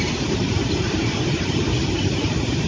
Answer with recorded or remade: remade